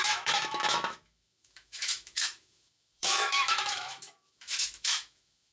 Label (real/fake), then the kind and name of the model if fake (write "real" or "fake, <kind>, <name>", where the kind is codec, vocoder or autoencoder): fake, autoencoder, DAC-VAE